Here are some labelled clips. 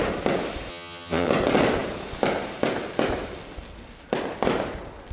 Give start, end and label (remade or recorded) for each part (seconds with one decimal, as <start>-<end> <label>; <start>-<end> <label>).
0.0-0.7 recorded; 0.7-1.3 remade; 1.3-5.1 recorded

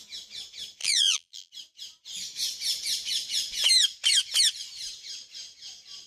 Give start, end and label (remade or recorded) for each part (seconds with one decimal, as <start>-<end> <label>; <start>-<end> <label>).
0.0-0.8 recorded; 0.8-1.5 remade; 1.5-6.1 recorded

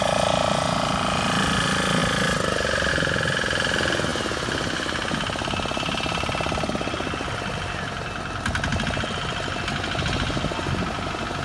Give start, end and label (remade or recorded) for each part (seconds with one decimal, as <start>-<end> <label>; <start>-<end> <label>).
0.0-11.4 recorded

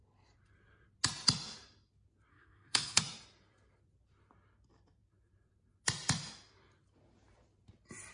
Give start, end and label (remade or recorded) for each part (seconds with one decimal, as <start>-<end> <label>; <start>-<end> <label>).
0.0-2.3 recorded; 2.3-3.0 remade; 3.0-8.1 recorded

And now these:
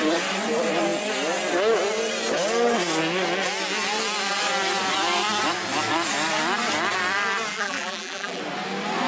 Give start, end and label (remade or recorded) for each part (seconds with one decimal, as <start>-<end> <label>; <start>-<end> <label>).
0.0-7.5 recorded; 7.5-8.4 remade; 8.4-9.1 recorded

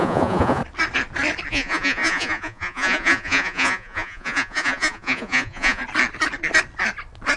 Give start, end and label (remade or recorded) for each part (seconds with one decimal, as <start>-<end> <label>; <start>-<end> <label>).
0.0-0.6 remade; 0.6-1.5 recorded; 1.5-5.8 remade; 5.8-7.4 recorded

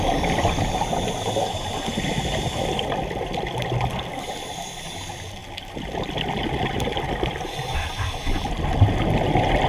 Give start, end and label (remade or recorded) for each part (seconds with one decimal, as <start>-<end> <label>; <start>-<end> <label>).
0.0-9.7 recorded

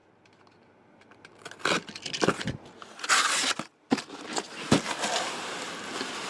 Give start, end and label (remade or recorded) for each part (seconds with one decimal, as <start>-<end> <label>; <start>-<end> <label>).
0.0-6.3 recorded